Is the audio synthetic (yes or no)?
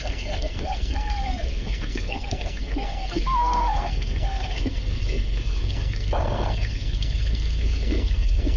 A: yes